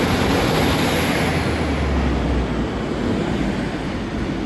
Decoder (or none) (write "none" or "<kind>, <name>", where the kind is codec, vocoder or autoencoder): none